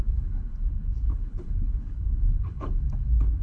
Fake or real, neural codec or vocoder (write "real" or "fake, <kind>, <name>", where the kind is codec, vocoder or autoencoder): fake, codec, HILCodec